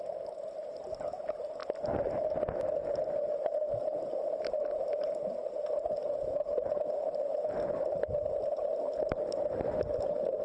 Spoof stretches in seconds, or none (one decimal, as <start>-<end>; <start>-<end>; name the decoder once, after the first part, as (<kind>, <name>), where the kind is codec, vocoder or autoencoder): none